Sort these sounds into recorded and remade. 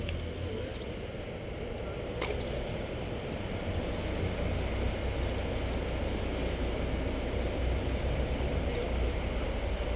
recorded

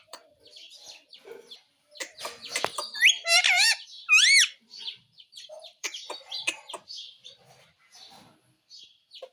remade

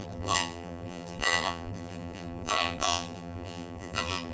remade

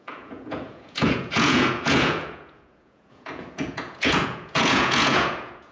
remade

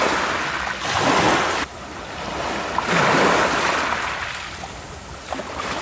recorded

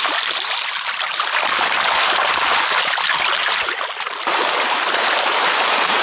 recorded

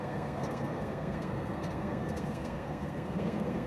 remade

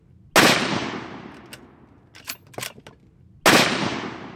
recorded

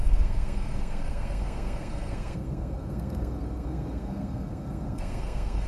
remade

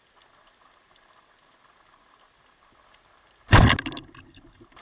recorded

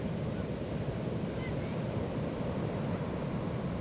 remade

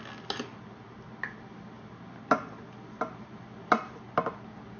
recorded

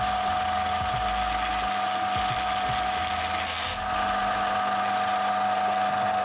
recorded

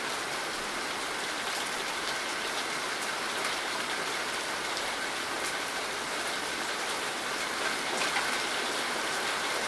recorded